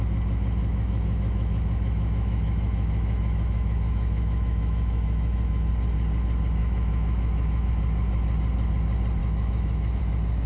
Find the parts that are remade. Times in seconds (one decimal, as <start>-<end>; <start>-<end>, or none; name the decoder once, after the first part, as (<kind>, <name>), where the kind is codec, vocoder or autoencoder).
0.6-5.7 (autoencoder, DAC-VAE); 6.6-7.7; 9.2-10.0

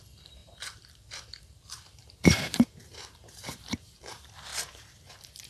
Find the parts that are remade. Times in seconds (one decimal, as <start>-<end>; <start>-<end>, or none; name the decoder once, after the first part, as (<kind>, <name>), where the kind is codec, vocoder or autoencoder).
0.0-5.5 (vocoder, BigVGAN v2)

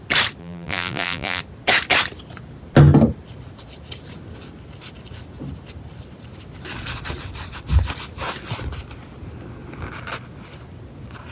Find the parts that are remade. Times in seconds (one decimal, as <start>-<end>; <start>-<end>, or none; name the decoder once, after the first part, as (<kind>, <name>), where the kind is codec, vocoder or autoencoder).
0.4-1.4 (vocoder, BigVGAN v2)

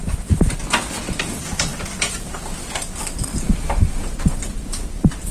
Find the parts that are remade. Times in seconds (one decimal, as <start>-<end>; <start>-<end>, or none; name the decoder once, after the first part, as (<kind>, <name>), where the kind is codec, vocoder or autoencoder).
none

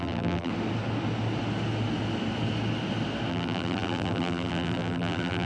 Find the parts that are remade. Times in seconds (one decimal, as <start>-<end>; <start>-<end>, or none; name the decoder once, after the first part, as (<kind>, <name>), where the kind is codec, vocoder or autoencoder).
0.0-0.5 (vocoder, BigVGAN v2); 3.3-5.5

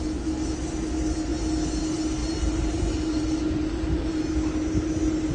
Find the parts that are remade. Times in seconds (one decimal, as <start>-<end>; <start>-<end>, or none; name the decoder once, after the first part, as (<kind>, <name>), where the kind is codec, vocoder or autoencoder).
2.2-4.2 (vocoder, BigVGAN v2)

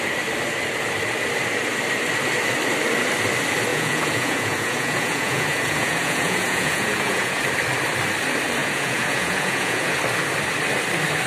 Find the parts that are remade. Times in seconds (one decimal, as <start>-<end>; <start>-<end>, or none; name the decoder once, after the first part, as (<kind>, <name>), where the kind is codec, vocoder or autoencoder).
3.7-7.4 (vocoder, Vocos); 8.6-10.0